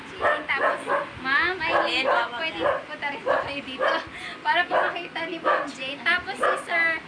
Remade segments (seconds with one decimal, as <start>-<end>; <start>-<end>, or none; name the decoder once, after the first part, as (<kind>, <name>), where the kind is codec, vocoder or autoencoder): none

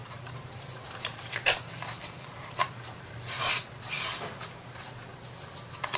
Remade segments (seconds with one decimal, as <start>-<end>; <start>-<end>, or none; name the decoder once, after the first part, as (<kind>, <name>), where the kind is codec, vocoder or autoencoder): 0.0-3.5 (vocoder, BigVGAN v2)

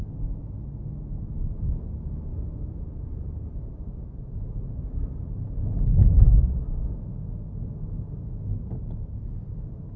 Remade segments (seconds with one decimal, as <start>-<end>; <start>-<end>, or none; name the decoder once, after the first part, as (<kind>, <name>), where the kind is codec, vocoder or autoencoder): 2.3-4.5 (vocoder, BigVGAN v2)

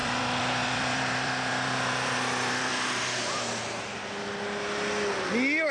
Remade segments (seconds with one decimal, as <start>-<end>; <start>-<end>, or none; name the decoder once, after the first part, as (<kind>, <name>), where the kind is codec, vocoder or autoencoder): 0.0-3.3 (vocoder, BigVGAN v2)

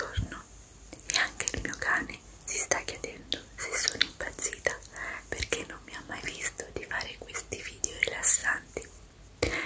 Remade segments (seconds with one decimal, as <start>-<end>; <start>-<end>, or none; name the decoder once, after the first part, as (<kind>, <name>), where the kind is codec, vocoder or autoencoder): none